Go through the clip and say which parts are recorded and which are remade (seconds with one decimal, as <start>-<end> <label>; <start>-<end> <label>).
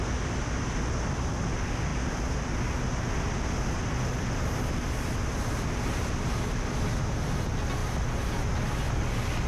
0.0-9.5 recorded